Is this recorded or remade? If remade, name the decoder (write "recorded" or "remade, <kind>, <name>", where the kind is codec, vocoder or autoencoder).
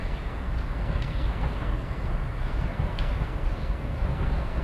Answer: remade, codec, SNAC